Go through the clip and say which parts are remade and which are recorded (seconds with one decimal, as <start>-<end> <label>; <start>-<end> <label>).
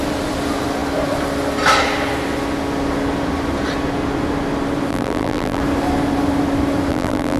0.0-4.9 recorded; 4.9-5.6 remade; 5.6-6.9 recorded; 6.9-7.4 remade